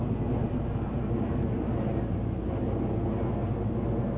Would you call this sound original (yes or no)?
yes